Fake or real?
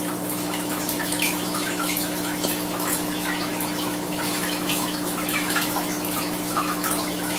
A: fake